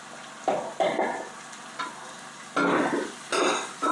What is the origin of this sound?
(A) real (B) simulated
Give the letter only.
A